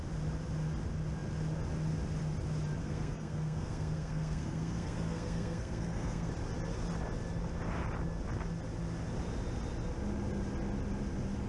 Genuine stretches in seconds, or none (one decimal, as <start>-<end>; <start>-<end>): 0.0-2.8; 6.3-11.5